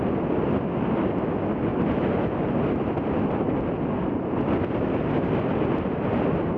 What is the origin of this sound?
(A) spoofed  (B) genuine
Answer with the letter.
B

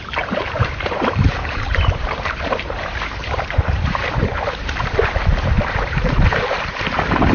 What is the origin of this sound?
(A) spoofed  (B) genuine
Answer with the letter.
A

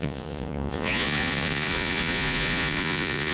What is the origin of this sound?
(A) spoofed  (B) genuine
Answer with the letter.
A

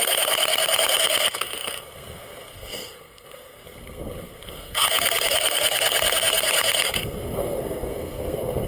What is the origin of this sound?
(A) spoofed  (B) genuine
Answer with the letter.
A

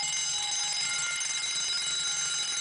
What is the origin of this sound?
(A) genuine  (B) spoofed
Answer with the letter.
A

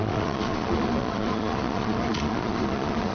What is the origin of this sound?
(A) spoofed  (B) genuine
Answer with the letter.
A